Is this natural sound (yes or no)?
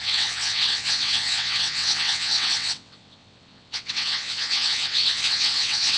no